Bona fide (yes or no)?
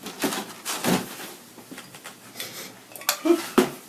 yes